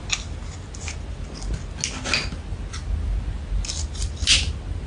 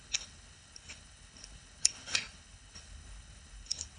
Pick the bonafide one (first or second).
first